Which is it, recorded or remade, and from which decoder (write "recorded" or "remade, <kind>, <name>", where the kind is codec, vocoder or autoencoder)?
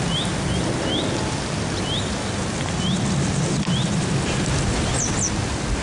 recorded